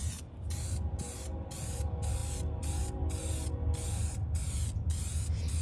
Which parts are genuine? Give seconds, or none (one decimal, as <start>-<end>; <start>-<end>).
0.0-5.6